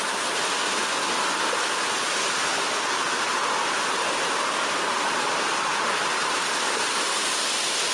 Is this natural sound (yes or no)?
yes